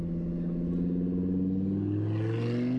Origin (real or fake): real